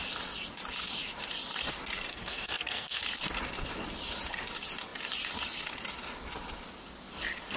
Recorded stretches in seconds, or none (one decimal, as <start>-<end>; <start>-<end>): 0.0-2.1; 3.0-7.6